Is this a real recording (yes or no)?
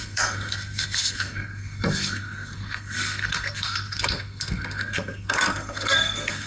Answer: no